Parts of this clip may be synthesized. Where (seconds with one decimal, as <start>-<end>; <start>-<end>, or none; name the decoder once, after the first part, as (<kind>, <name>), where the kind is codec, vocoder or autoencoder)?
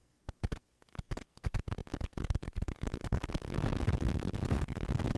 0.0-5.2 (codec, SNAC)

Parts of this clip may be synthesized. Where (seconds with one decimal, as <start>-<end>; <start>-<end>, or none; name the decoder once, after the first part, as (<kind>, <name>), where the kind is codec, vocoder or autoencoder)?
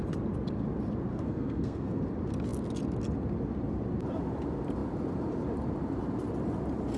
1.1-2.0 (codec, SNAC)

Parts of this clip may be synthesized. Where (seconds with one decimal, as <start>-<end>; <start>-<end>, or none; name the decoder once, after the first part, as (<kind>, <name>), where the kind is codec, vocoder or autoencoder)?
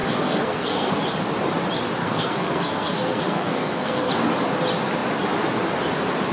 0.0-0.9 (codec, SNAC); 2.0-4.1